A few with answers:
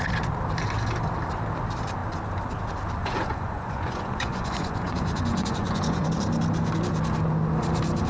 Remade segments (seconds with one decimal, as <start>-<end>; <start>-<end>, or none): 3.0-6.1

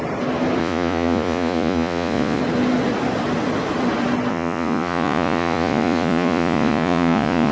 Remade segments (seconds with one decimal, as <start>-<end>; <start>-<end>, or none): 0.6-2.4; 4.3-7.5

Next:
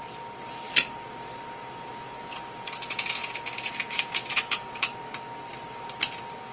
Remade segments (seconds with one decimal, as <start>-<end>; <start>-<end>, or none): 1.9-4.9